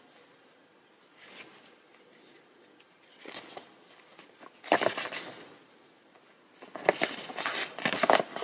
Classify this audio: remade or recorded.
recorded